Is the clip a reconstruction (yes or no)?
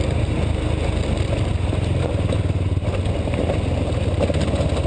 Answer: no